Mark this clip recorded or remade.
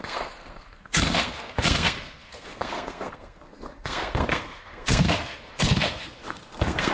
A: remade